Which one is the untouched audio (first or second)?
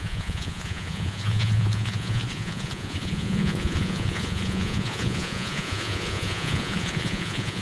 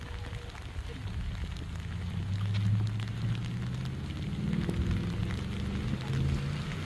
second